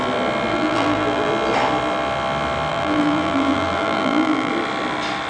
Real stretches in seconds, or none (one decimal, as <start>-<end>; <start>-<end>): 0.0-0.5; 1.3-2.7; 4.5-5.3